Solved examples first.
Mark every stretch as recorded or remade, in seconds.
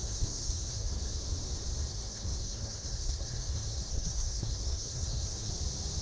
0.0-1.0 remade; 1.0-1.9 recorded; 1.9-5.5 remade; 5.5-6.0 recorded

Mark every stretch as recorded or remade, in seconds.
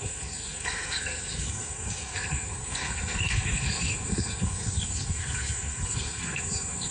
0.0-6.9 remade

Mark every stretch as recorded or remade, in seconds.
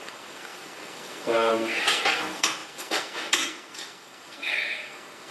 0.0-5.3 remade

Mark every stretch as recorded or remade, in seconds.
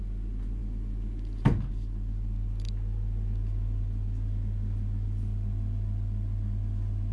0.0-7.1 recorded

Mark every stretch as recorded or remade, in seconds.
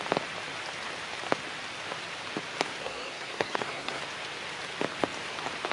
0.0-2.8 recorded; 2.8-4.0 remade; 4.0-5.7 recorded